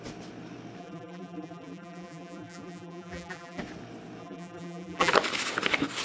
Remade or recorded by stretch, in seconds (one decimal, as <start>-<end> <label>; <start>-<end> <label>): 0.0-0.8 recorded; 0.8-3.6 remade; 3.6-4.2 recorded; 4.2-5.1 remade; 5.1-6.0 recorded